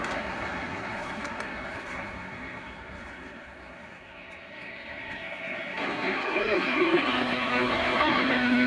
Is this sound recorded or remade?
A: remade